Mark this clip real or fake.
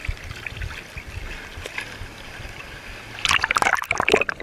real